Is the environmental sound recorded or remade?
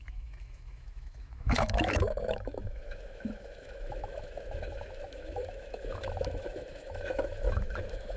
remade